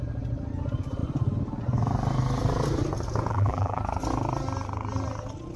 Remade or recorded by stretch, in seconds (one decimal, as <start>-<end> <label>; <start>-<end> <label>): 0.0-3.3 recorded; 3.3-3.8 remade; 3.8-5.6 recorded